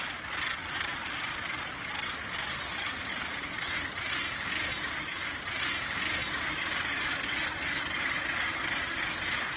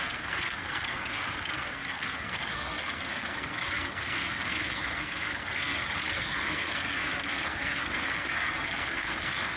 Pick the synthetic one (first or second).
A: second